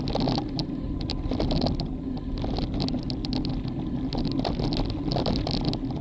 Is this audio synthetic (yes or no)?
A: no